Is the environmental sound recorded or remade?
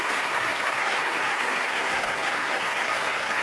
remade